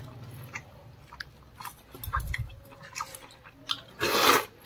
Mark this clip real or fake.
real